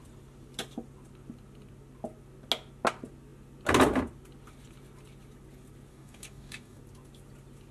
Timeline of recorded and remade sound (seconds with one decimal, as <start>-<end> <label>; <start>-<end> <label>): 0.0-5.9 recorded; 5.9-6.8 remade; 6.8-7.7 recorded